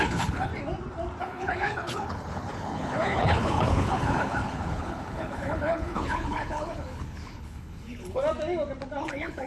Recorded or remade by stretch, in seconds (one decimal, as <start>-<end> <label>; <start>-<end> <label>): 0.0-0.5 remade; 0.5-1.2 recorded; 1.2-8.2 remade; 8.2-9.0 recorded; 9.0-9.5 remade